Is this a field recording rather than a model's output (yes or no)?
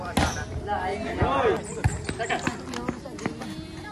yes